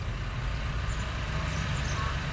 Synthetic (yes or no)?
no